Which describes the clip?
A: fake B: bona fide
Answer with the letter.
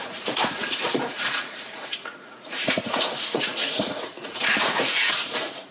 A